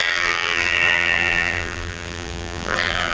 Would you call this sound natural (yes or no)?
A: no